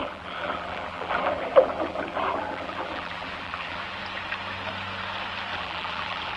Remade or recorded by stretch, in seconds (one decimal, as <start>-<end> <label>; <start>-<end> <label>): 0.0-3.8 remade; 3.8-5.5 recorded; 5.5-6.4 remade